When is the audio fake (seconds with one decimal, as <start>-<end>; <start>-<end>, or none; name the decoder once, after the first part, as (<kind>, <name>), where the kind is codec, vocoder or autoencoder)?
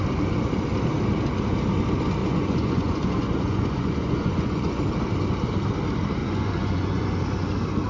2.2-4.8 (vocoder, Vocos); 6.2-7.2